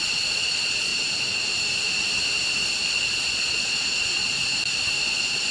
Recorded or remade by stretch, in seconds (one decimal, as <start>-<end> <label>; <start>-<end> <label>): 0.0-0.9 remade; 0.9-2.8 recorded; 2.8-4.4 remade; 4.4-5.0 recorded; 5.0-5.5 remade